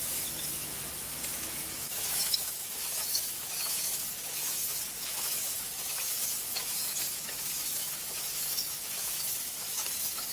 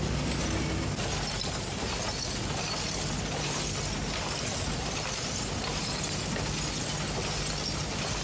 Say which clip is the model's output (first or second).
first